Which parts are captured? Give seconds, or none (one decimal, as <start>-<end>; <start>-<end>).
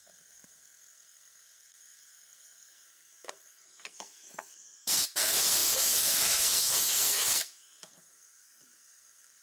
none